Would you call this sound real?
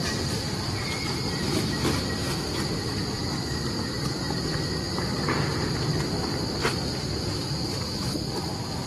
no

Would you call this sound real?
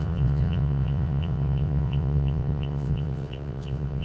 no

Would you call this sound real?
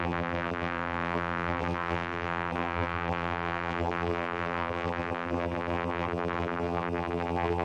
no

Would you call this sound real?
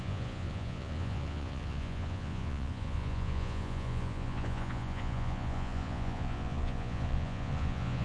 no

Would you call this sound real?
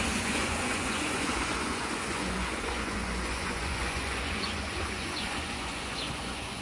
no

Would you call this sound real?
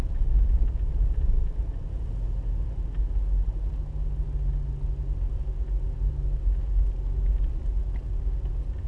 yes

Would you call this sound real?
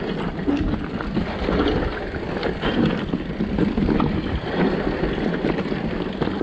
yes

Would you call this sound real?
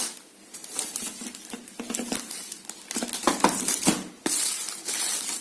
yes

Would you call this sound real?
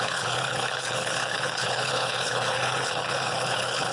no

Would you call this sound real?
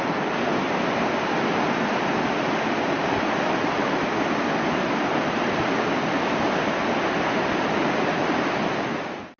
yes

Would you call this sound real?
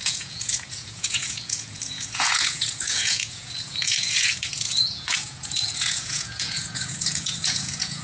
no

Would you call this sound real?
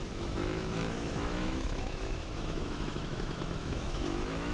no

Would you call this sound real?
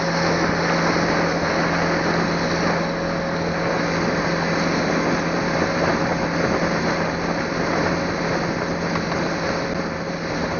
yes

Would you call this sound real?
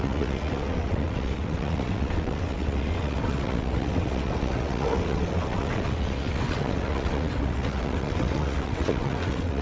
no